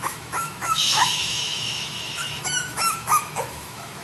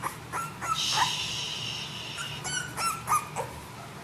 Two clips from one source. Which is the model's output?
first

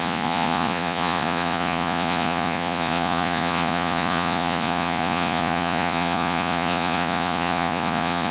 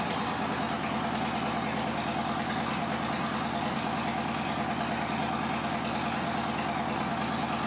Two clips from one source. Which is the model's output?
first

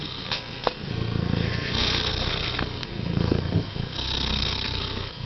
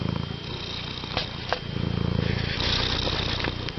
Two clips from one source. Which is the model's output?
first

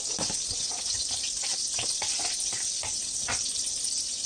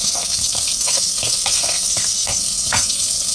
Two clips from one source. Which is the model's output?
second